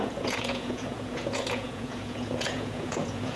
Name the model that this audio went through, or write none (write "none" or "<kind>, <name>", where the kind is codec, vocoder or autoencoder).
vocoder, Vocos